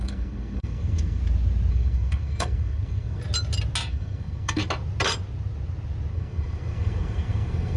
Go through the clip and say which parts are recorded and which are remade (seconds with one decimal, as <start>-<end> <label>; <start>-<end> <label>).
0.0-1.2 remade; 1.2-1.7 recorded; 1.7-3.2 remade; 3.2-3.9 recorded; 3.9-4.6 remade; 4.6-6.1 recorded; 6.1-7.8 remade